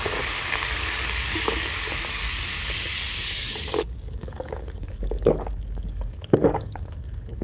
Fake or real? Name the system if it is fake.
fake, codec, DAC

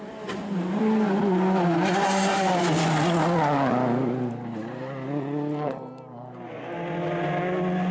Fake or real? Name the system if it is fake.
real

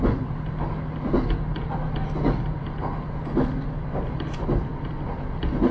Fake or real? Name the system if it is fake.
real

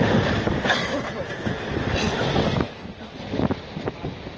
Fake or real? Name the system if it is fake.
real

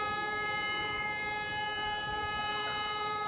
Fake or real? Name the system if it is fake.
fake, vocoder, BigVGAN v2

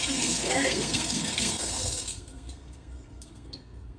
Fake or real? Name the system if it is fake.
fake, codec, SNAC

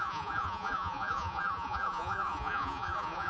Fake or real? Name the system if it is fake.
fake, vocoder, Vocos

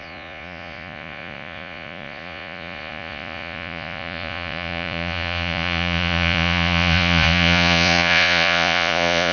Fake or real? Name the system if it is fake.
fake, vocoder, Vocos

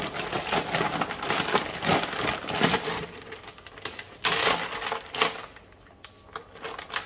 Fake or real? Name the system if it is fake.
real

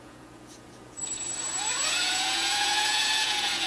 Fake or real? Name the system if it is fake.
fake, vocoder, Vocos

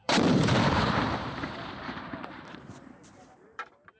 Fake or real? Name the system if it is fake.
fake, vocoder, BigVGAN v2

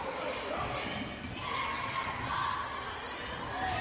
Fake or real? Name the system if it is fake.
real